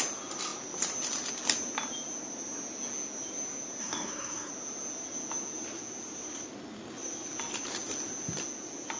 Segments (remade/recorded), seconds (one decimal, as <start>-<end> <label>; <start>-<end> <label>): 0.0-3.8 recorded; 3.8-4.5 remade; 4.5-9.0 recorded